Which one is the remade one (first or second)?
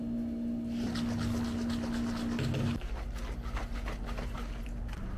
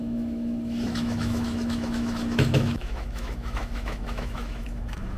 second